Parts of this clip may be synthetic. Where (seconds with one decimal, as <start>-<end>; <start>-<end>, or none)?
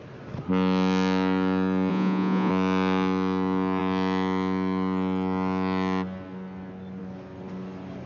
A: 1.9-2.5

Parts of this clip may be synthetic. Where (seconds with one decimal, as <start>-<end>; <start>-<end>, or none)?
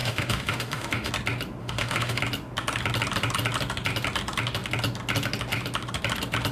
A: 0.0-1.1; 1.6-2.2